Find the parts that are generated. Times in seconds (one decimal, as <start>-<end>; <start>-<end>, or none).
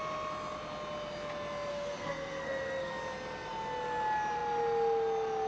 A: 1.7-2.9